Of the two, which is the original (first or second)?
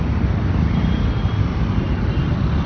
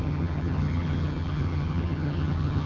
first